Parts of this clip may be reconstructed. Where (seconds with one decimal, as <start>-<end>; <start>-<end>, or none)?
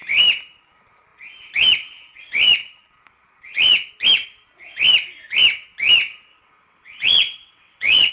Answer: 6.3-8.1